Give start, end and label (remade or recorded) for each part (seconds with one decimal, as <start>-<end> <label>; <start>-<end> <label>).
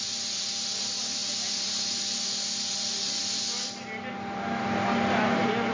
0.0-5.7 recorded